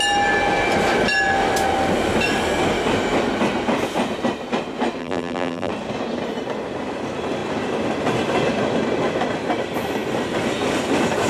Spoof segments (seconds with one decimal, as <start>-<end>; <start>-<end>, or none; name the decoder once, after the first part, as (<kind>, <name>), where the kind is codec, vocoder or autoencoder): 5.0-5.7 (vocoder, BigVGAN v2)